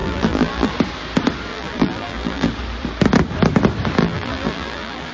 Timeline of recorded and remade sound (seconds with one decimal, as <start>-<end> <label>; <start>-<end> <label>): 0.0-0.7 remade; 0.7-1.5 recorded; 1.5-2.5 remade; 2.5-4.0 recorded; 4.0-5.1 remade